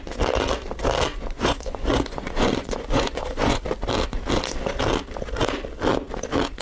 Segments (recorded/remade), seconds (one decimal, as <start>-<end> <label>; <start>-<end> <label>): 0.0-1.1 recorded; 1.1-3.6 remade; 3.6-6.6 recorded